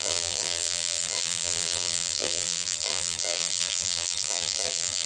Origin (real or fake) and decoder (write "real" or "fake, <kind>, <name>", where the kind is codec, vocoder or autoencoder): fake, vocoder, BigVGAN v2